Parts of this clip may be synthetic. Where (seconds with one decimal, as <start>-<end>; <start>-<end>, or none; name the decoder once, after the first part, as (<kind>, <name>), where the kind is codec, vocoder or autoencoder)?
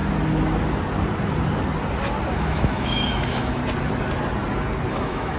2.4-3.6 (autoencoder, DAC-VAE); 4.9-5.4